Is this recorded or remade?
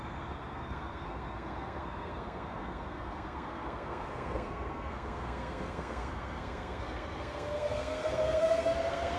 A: remade